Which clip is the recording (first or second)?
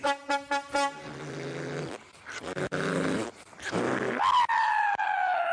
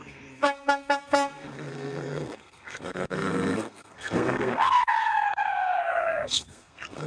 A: first